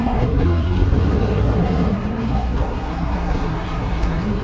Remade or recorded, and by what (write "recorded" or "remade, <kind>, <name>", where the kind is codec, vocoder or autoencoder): remade, codec, SNAC